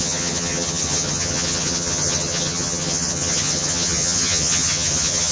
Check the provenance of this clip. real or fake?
fake